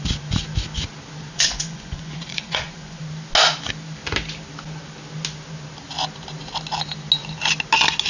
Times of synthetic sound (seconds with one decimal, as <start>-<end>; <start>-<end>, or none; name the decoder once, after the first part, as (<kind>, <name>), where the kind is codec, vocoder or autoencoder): 1.3-3.0 (vocoder, Vocos)